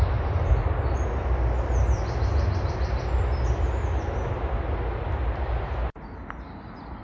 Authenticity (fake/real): real